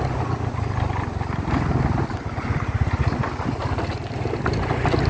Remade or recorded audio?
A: recorded